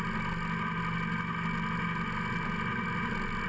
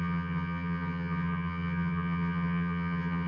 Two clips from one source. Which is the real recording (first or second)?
first